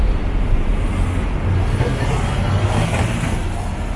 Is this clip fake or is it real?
real